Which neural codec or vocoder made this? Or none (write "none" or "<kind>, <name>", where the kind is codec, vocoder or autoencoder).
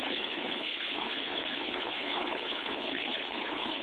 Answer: codec, HILCodec